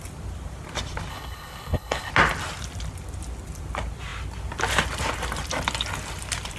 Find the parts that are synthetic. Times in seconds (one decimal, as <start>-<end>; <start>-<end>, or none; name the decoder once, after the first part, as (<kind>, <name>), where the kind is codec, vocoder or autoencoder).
1.1-2.1 (codec, HILCodec)